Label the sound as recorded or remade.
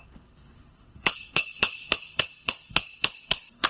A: remade